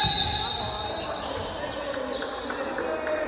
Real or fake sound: real